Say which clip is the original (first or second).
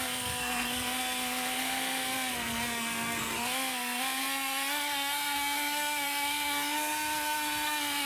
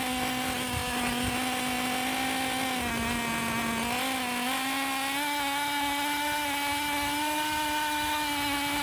second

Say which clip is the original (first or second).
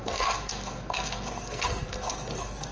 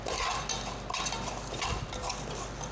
second